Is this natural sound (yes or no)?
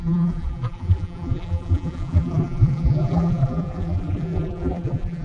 no